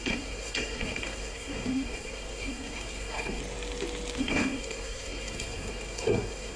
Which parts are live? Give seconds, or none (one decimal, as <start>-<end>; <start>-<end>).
3.4-4.2